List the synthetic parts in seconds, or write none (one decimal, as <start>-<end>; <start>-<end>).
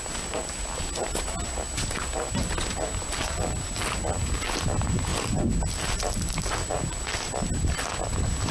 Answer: none